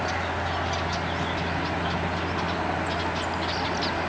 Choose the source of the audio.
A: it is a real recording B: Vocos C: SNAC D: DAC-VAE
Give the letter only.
A